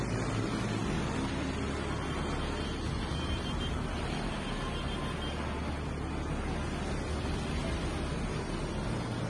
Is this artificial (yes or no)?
no